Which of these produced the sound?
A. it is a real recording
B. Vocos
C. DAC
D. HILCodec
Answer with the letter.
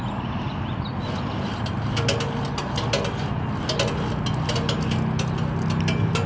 A